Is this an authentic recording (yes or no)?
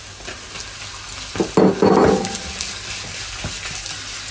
yes